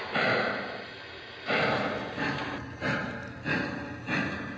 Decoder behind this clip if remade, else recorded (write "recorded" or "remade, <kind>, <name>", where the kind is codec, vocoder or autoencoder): recorded